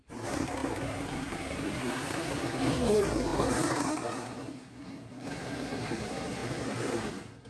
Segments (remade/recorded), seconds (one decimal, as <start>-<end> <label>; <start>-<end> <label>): 0.0-7.5 remade